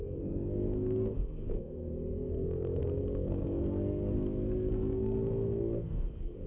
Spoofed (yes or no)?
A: yes